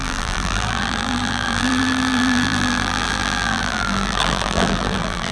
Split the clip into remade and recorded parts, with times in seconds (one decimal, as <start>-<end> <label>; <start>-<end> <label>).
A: 0.0-5.3 remade